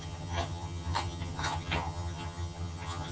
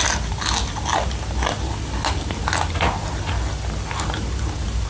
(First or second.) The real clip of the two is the second